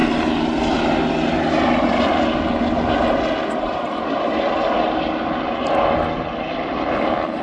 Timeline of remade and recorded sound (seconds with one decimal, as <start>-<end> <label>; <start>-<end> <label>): 0.0-7.4 recorded

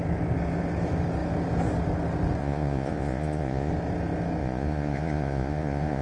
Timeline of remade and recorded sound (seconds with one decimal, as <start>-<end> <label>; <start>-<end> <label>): 0.0-2.4 recorded; 2.4-3.7 remade; 3.7-4.4 recorded; 4.4-6.0 remade

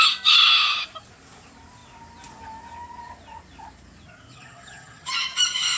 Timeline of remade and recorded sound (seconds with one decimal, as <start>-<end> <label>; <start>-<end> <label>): 0.0-4.3 recorded; 4.3-5.1 remade; 5.1-5.8 recorded

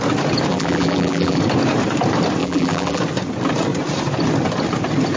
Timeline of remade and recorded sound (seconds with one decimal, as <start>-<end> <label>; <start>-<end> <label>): 0.0-0.5 recorded; 0.5-1.4 remade; 1.4-2.4 recorded; 2.4-3.0 remade; 3.0-5.2 recorded

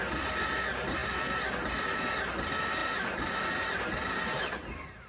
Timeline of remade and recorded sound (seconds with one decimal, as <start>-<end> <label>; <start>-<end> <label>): 0.0-5.1 recorded